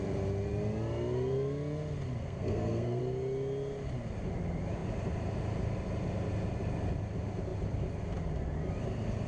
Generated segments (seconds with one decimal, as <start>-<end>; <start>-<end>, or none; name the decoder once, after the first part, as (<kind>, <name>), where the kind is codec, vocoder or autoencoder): 2.2-3.0 (codec, SNAC)